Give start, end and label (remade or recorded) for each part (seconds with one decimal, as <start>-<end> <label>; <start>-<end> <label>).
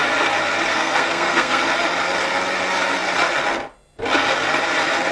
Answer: 0.0-0.7 recorded; 0.7-1.6 remade; 1.6-5.1 recorded